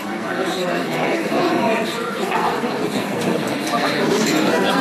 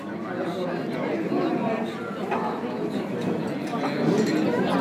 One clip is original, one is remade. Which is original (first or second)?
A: second